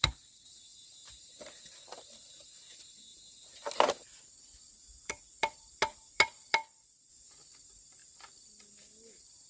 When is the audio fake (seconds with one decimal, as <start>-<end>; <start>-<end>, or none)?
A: 0.0-0.7; 2.0-3.1; 4.4-8.0; 8.8-9.5